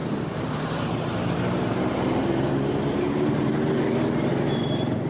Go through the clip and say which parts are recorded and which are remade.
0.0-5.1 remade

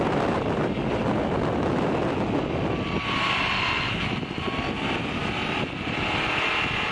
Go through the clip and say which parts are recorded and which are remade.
0.0-6.9 recorded

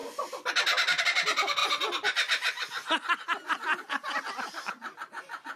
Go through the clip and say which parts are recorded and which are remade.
0.0-5.6 recorded

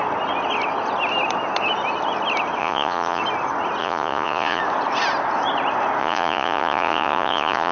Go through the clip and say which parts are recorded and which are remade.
0.0-2.6 recorded; 2.6-3.2 remade; 3.2-3.8 recorded; 3.8-4.6 remade; 4.6-6.0 recorded; 6.0-7.7 remade

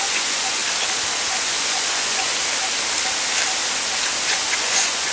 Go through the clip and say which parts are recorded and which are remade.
0.0-0.6 remade; 0.6-1.3 recorded; 1.3-2.3 remade; 2.3-4.3 recorded; 4.3-5.1 remade

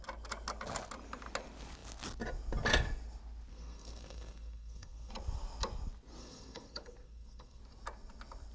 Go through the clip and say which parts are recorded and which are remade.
0.0-3.5 recorded; 3.5-5.1 remade; 5.1-6.2 recorded; 6.2-7.6 remade; 7.6-8.5 recorded

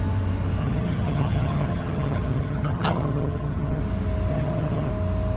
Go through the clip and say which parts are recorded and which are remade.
0.0-0.6 recorded; 0.6-3.8 remade; 3.8-4.3 recorded; 4.3-4.9 remade; 4.9-5.4 recorded